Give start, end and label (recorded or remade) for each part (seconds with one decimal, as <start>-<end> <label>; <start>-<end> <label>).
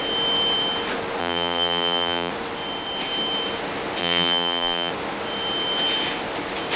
0.0-1.2 recorded; 1.2-2.3 remade; 2.3-4.0 recorded; 4.0-4.9 remade; 4.9-6.8 recorded